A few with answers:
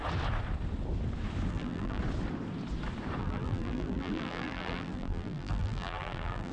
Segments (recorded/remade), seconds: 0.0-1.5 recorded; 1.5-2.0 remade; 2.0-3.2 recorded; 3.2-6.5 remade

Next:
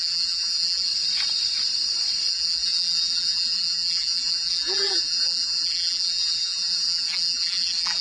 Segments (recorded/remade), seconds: 0.0-0.9 remade; 0.9-2.3 recorded; 2.3-8.0 remade

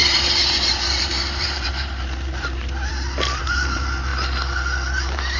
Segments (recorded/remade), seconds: 0.0-2.9 remade; 2.9-3.4 recorded; 3.4-4.1 remade; 4.1-5.0 recorded; 5.0-5.4 remade

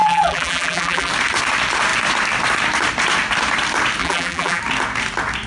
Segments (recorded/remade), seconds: 0.0-1.1 remade; 1.1-4.0 recorded; 4.0-4.6 remade; 4.6-5.5 recorded

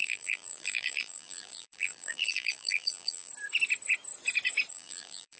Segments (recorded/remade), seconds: 0.0-3.3 remade; 3.3-4.7 recorded; 4.7-5.4 remade

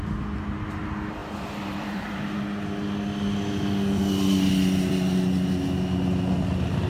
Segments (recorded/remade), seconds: 0.0-1.2 recorded; 1.2-2.2 remade; 2.2-6.9 recorded

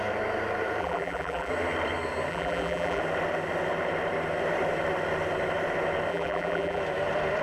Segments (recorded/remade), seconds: 0.0-0.8 recorded; 0.8-1.5 remade; 1.5-2.3 recorded; 2.3-3.0 remade; 3.0-6.1 recorded; 6.1-6.8 remade; 6.8-7.4 recorded

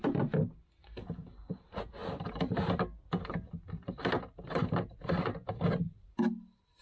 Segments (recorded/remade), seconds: 0.0-2.0 recorded; 2.0-6.1 remade; 6.1-6.8 recorded